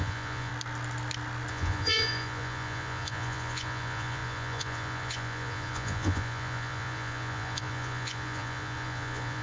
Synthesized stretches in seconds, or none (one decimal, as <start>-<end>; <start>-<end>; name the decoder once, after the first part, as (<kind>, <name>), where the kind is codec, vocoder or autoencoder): 0.0-0.5 (vocoder, Vocos); 1.5-9.4